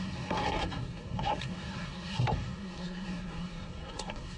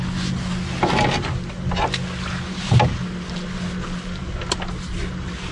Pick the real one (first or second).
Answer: second